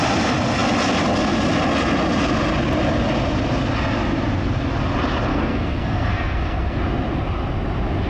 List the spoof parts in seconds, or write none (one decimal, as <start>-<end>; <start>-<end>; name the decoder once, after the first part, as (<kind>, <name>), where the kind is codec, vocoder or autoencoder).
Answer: 5.3-6.8 (codec, SNAC)

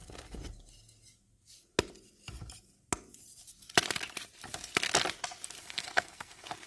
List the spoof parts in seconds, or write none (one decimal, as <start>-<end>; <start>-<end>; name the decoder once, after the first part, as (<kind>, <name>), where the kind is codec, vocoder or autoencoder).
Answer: 5.6-6.7 (codec, SNAC)